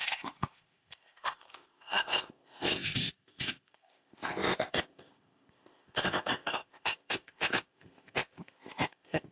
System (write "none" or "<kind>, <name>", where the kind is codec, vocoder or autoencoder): codec, ZipCodec